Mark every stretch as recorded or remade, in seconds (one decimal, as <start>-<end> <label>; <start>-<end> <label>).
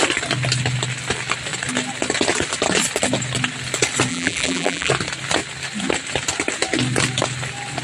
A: 0.0-4.1 recorded; 4.1-4.9 remade; 4.9-7.8 recorded